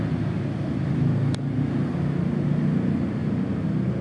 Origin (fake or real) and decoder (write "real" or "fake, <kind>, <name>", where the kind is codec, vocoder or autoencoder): real